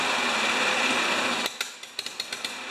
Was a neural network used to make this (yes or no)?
no